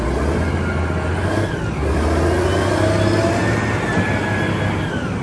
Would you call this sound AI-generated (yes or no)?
no